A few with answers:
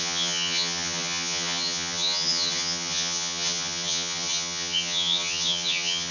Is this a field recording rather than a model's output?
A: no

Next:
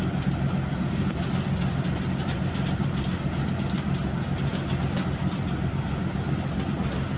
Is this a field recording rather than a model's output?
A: yes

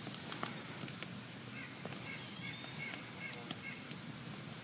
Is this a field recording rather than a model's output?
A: yes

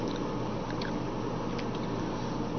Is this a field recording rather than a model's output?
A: yes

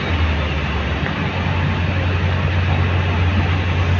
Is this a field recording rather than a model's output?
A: yes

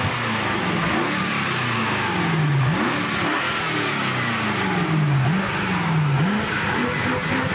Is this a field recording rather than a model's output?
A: yes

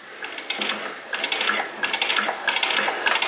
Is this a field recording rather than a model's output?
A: yes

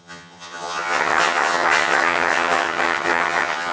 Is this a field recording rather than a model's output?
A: no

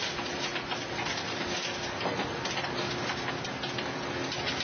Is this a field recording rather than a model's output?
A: yes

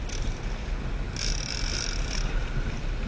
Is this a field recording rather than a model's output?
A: yes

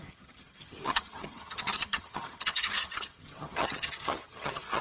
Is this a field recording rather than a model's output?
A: no